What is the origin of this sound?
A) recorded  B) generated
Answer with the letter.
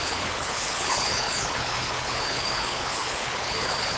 B